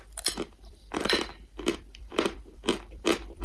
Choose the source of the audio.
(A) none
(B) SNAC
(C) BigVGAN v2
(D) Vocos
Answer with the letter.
C